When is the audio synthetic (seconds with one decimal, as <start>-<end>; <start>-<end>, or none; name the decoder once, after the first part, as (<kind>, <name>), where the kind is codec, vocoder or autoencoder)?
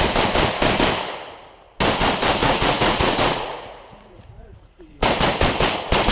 2.4-4.8 (vocoder, Vocos)